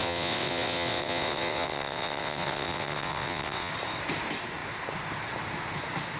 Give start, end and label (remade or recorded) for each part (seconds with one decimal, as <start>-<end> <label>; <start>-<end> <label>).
0.0-3.7 remade; 3.7-6.2 recorded